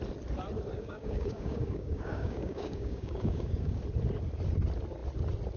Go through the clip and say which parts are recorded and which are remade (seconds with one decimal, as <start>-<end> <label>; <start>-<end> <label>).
0.0-0.7 recorded; 0.7-3.8 remade; 3.8-5.6 recorded